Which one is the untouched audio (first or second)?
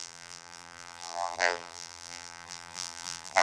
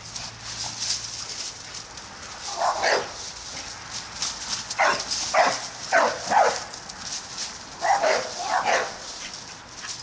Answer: second